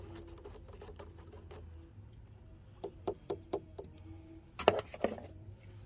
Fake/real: real